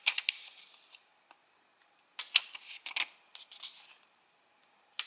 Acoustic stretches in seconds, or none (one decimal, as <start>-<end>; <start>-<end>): 0.0-5.1